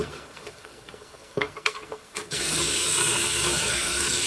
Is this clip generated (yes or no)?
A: yes